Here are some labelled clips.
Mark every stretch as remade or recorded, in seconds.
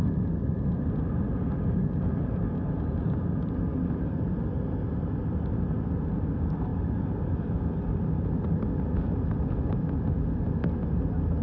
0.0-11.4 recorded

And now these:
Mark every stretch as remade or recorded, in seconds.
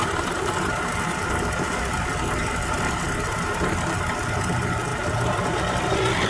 0.0-0.7 remade; 0.7-4.9 recorded; 4.9-5.6 remade; 5.6-6.3 recorded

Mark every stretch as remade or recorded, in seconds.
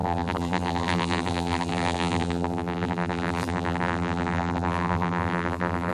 0.0-5.9 remade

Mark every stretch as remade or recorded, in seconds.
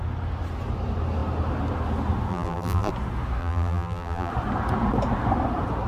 0.0-2.3 recorded; 2.3-2.9 remade; 2.9-3.4 recorded; 3.4-4.3 remade; 4.3-5.9 recorded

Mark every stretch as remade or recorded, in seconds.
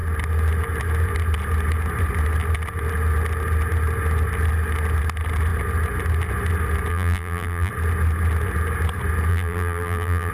0.0-6.9 recorded; 6.9-7.7 remade; 7.7-9.3 recorded; 9.3-10.3 remade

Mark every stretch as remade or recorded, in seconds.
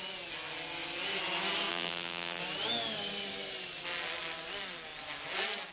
0.0-1.7 recorded; 1.7-2.4 remade; 2.4-5.7 recorded